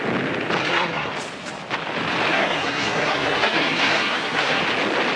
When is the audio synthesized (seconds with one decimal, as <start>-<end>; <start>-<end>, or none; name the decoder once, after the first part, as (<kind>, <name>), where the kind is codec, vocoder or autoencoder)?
0.6-1.1 (codec, SNAC); 2.3-4.6